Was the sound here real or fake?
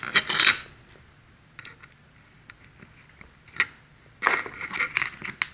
real